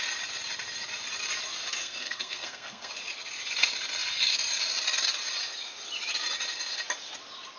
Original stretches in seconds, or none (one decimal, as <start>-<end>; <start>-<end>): 0.0-1.8; 2.9-7.6